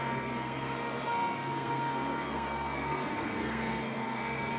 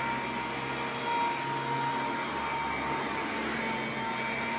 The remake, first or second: first